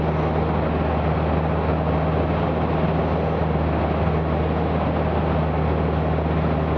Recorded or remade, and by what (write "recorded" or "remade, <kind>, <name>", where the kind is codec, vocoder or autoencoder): recorded